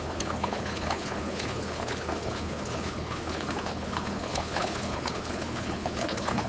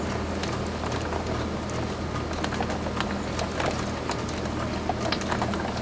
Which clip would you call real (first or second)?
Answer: second